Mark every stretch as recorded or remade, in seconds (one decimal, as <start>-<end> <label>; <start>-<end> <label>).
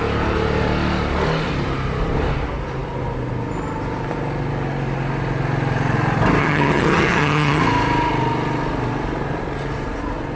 0.0-6.4 recorded; 6.4-7.6 remade; 7.6-10.4 recorded